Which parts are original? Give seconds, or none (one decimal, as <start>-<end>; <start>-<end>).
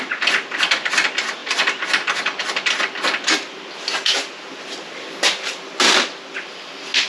0.0-7.1